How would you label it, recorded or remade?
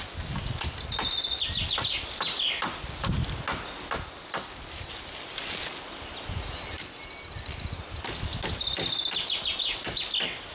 recorded